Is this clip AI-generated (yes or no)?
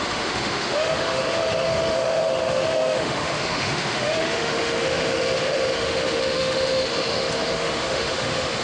yes